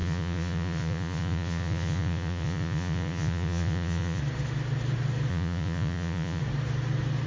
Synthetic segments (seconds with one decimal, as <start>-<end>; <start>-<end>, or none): 0.0-4.2; 5.3-6.4